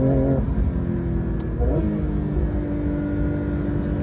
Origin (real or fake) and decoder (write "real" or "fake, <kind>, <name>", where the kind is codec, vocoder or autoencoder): real